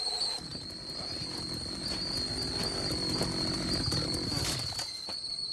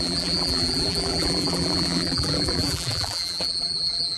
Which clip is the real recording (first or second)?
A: first